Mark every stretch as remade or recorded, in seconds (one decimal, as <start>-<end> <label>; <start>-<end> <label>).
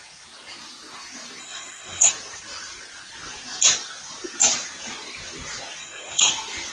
0.0-1.4 recorded; 1.4-2.1 remade; 2.1-5.8 recorded; 5.8-6.3 remade; 6.3-6.7 recorded